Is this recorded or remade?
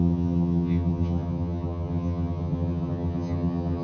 remade